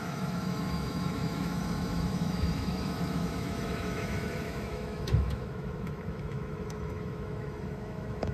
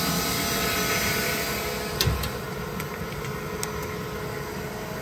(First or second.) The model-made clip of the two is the first